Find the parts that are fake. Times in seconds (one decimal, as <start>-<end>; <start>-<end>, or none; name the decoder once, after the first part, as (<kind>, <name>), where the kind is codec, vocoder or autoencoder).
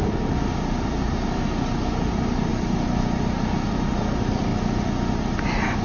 0.0-4.5 (vocoder, BigVGAN v2); 5.1-5.8